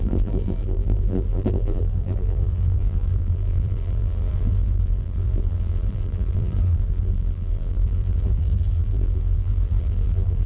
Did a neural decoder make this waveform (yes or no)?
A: yes